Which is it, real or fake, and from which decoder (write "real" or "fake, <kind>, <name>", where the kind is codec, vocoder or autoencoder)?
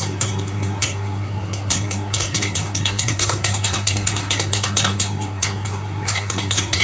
fake, codec, SNAC